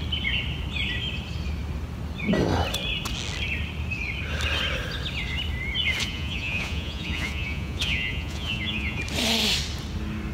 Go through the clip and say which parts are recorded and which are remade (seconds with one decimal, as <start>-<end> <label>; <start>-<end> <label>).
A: 0.0-6.0 recorded; 6.0-9.0 remade; 9.0-10.3 recorded